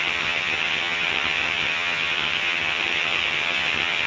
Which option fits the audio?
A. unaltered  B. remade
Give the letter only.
B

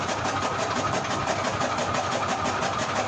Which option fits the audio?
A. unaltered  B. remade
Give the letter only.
A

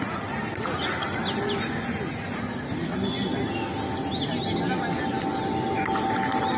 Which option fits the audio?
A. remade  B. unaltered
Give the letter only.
B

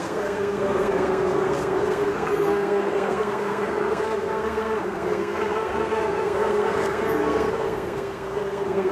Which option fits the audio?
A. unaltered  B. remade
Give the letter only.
B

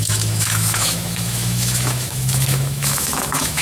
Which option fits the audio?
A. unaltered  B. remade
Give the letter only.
B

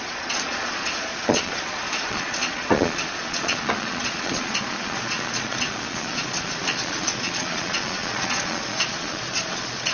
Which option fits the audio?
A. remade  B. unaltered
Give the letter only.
A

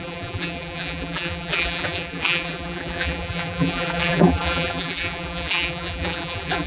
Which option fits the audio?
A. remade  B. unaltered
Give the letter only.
A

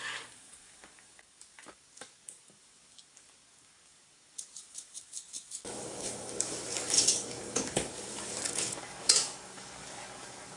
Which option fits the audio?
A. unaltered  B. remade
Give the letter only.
B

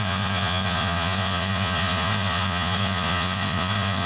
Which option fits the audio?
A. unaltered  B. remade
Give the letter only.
B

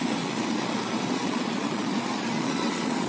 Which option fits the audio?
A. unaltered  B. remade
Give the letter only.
B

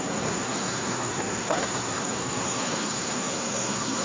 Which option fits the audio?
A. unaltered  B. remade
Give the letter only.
B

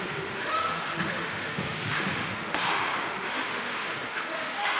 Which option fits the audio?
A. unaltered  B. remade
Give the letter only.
B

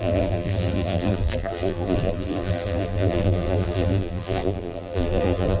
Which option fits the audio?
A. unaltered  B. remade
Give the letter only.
B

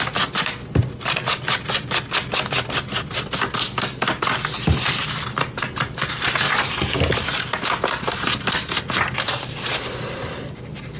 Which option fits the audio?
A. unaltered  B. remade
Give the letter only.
A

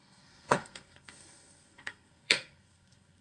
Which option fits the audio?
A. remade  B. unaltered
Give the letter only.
A